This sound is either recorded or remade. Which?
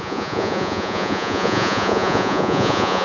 remade